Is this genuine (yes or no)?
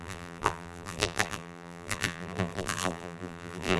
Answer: no